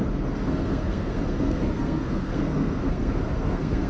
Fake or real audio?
fake